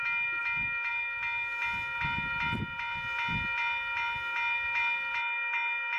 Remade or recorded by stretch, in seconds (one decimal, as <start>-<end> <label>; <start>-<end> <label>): 0.0-6.0 recorded